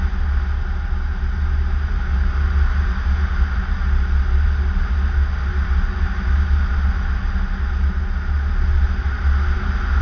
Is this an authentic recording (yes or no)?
yes